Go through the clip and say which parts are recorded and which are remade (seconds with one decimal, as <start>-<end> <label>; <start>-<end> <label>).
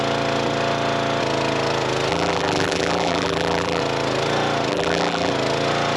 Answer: 0.0-2.1 recorded; 2.1-3.8 remade; 3.8-4.7 recorded; 4.7-5.3 remade; 5.3-6.0 recorded